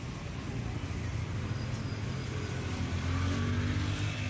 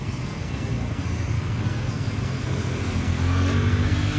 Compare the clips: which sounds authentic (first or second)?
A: first